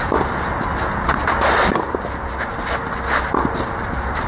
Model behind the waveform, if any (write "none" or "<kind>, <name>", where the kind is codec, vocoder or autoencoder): none